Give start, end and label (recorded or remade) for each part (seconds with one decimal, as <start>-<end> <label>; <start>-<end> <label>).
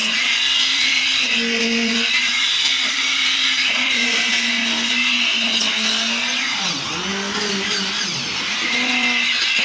0.0-4.3 remade; 4.3-7.1 recorded; 7.1-8.5 remade; 8.5-9.6 recorded